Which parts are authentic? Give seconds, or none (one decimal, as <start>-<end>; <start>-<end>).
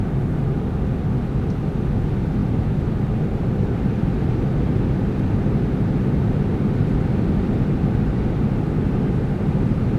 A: 0.0-2.4; 3.5-10.0